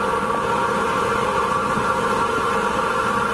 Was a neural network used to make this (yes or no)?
no